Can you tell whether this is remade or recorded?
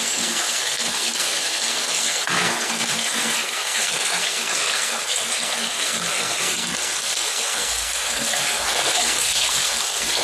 remade